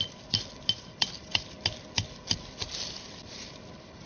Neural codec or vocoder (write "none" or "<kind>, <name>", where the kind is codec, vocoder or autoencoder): none